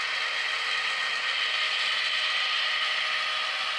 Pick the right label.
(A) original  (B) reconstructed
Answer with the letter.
A